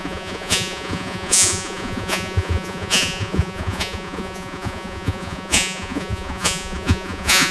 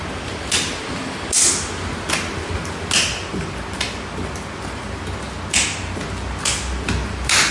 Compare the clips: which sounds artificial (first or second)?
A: first